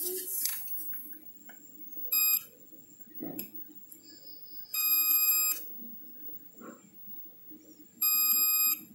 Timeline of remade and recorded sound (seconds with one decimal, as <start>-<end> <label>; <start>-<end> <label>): 0.0-5.3 remade; 5.3-6.2 recorded; 6.2-8.9 remade